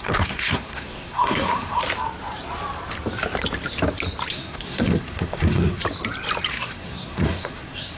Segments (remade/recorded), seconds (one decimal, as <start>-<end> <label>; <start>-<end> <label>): 0.0-1.8 remade; 1.8-4.3 recorded; 4.3-5.8 remade; 5.8-6.5 recorded; 6.5-8.0 remade